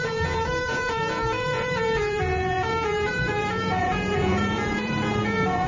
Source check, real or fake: fake